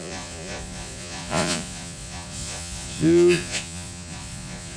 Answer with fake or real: fake